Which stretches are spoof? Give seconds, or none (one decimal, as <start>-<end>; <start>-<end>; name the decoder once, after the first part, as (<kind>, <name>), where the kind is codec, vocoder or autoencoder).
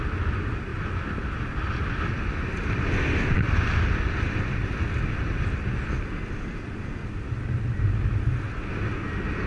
none